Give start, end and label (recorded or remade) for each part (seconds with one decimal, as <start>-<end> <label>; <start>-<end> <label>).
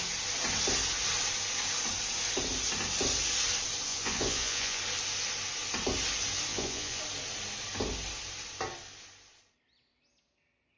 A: 0.0-3.9 recorded; 3.9-4.8 remade; 4.8-6.5 recorded; 6.5-7.0 remade; 7.0-10.8 recorded